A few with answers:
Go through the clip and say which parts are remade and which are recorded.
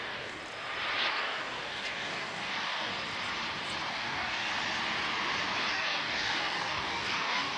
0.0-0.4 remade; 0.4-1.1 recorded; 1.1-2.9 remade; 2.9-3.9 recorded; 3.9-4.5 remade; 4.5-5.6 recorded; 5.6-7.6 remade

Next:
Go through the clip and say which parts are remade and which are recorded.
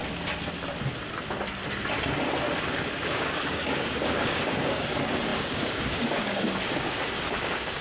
0.0-3.0 recorded; 3.0-7.8 remade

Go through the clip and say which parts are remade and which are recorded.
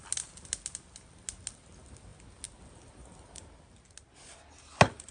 0.0-5.1 recorded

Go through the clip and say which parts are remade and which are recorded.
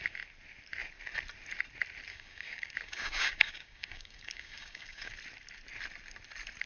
0.0-2.1 recorded; 2.1-5.1 remade; 5.1-6.7 recorded